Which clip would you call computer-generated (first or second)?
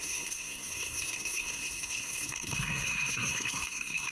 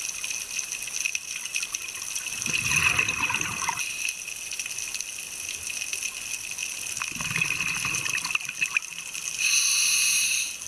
first